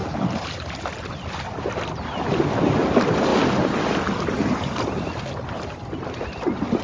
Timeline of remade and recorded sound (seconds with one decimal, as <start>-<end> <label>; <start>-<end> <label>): 0.0-6.8 recorded